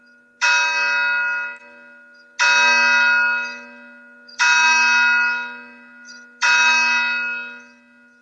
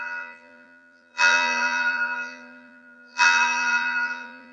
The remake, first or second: second